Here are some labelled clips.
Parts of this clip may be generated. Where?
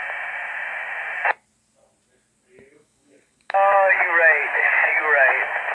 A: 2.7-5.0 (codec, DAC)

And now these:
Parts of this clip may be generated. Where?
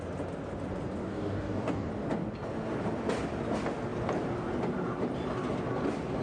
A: 1.0-1.9 (codec, DAC)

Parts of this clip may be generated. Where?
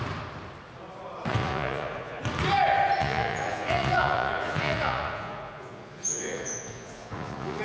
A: 1.3-2.2 (vocoder, Vocos); 3.0-7.6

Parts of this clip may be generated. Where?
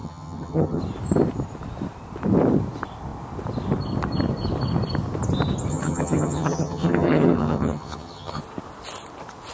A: 0.0-0.8 (vocoder, HiFi-GAN); 5.7-8.4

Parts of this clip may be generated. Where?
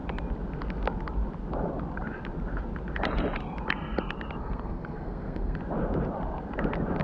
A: 4.4-5.6 (codec, SNAC)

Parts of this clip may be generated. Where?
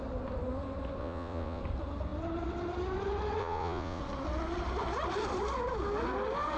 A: 1.0-1.6 (vocoder, Vocos); 3.4-4.0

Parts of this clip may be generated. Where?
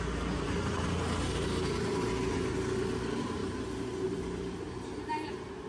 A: 3.4-5.3 (vocoder, BigVGAN v2)